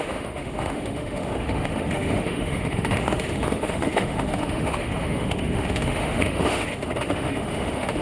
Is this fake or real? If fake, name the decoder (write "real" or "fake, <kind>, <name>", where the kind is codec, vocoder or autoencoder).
fake, autoencoder, DAC-VAE